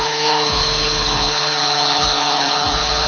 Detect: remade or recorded remade